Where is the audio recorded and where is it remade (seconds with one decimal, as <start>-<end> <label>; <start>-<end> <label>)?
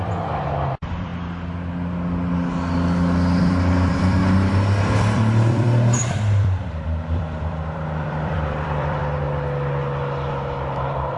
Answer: 0.0-1.1 remade; 1.1-3.4 recorded; 3.4-4.2 remade; 4.2-4.8 recorded; 4.8-9.0 remade; 9.0-10.3 recorded; 10.3-11.2 remade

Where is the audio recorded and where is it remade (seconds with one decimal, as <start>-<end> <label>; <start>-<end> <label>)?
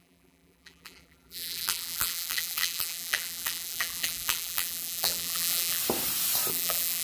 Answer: 0.0-5.8 remade; 5.8-6.5 recorded; 6.5-7.0 remade